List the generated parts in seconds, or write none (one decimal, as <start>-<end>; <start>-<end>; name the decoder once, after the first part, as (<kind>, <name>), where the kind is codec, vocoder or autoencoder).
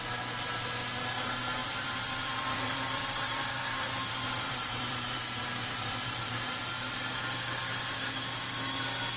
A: 1.6-6.2 (vocoder, BigVGAN v2)